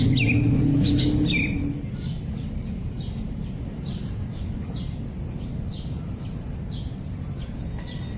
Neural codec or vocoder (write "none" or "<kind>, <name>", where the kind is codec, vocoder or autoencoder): none